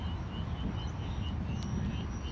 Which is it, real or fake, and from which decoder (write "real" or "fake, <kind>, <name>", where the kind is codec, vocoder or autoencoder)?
real